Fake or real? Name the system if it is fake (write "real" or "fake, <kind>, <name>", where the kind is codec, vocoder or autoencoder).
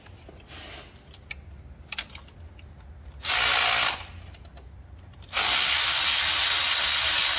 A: real